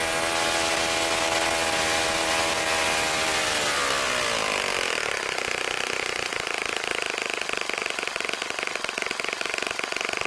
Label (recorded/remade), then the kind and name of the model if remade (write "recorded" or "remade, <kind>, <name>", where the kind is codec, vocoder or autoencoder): recorded